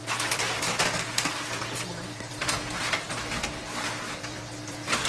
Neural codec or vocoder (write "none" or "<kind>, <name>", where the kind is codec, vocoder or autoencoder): none